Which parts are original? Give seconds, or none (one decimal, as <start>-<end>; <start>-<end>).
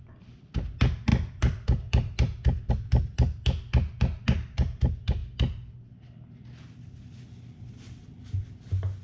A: 0.0-1.1; 2.7-9.0